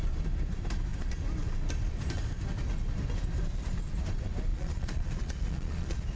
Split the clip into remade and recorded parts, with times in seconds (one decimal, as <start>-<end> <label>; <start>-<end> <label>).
0.0-4.5 recorded; 4.5-6.2 remade